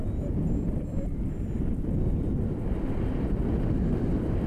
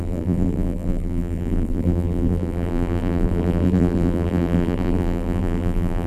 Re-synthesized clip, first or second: second